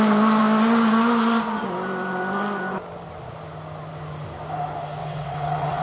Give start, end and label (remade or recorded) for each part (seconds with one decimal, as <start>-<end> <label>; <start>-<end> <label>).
0.0-5.0 recorded; 5.0-5.8 remade